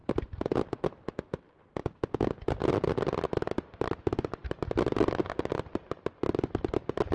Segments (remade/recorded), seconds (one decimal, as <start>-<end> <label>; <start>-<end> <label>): 0.0-7.1 recorded